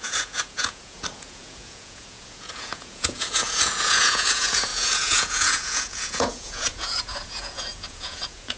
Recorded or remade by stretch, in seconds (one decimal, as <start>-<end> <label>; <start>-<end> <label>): 0.0-8.6 remade

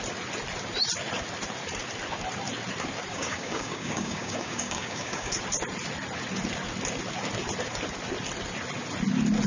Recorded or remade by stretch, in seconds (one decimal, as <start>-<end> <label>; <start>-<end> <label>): 0.0-3.1 recorded; 3.1-5.3 remade; 5.3-9.5 recorded

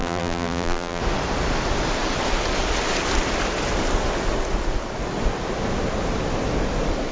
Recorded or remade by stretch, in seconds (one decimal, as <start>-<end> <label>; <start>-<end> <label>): 0.0-1.0 remade; 1.0-7.1 recorded

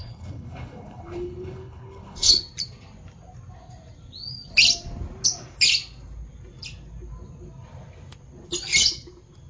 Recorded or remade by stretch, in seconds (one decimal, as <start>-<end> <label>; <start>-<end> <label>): 0.0-2.4 remade; 2.4-9.5 recorded